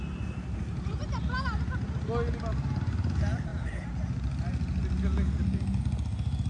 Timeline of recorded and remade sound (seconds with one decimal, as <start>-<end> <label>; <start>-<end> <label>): 0.0-6.5 recorded